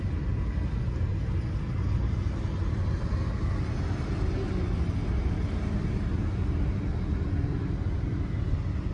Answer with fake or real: real